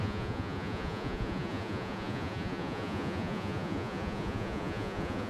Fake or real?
fake